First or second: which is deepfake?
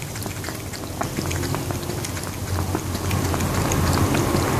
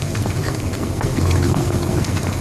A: second